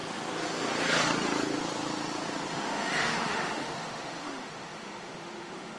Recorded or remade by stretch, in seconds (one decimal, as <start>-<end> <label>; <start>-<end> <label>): 0.0-2.5 recorded; 2.5-5.8 remade